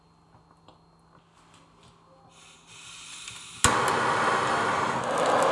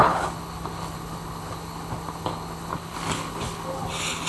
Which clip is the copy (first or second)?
second